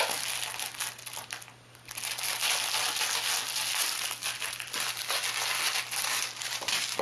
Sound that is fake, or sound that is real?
real